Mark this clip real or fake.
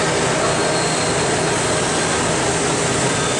real